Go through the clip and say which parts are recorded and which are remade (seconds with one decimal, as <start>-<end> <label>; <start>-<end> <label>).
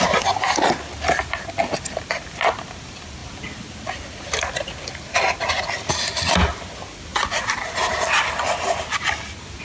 0.0-9.6 recorded